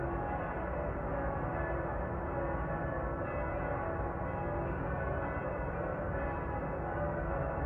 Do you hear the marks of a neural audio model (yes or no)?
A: no